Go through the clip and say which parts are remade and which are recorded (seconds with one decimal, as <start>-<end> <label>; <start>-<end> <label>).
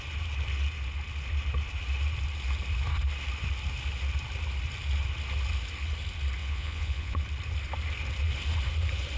0.0-6.4 recorded; 6.4-7.2 remade; 7.2-9.2 recorded